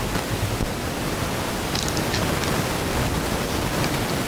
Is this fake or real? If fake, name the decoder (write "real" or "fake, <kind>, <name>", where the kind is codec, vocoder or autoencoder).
real